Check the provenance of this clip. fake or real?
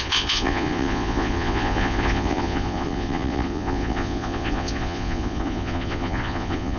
fake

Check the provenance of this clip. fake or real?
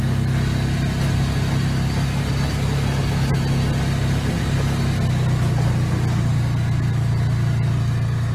real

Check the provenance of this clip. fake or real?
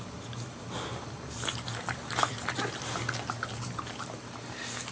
real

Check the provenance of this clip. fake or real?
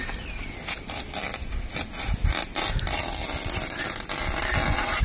real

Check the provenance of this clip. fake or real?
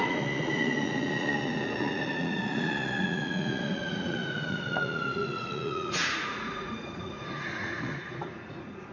fake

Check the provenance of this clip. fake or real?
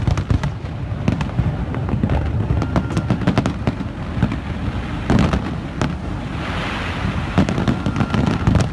real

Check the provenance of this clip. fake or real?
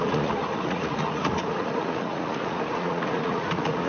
fake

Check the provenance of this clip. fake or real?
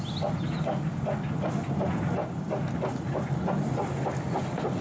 real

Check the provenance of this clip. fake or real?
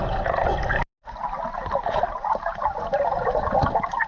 real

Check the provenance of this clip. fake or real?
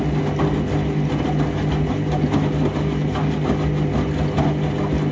real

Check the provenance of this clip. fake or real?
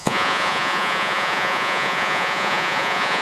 fake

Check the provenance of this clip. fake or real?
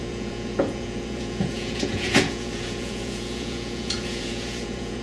fake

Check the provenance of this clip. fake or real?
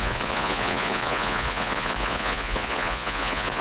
fake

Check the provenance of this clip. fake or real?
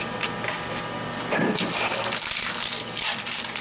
real